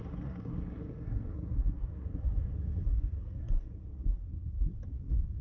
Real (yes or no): no